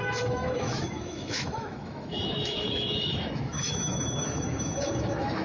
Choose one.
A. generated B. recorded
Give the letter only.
A